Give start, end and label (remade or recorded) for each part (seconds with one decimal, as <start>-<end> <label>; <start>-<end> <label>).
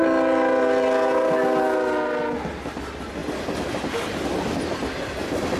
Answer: 0.0-5.6 recorded